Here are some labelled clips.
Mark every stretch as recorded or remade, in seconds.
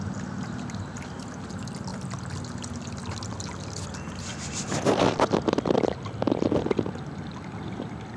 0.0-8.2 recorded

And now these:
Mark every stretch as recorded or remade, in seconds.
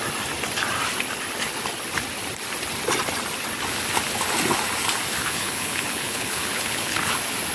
0.0-5.2 recorded; 5.2-7.1 remade; 7.1-7.5 recorded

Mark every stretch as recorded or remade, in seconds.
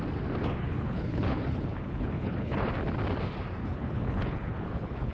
0.0-0.6 recorded; 0.6-2.7 remade; 2.7-3.6 recorded; 3.6-5.1 remade